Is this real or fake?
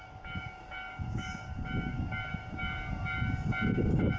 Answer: fake